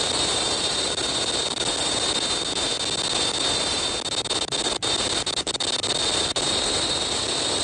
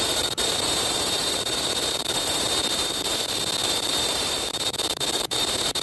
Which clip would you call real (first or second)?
first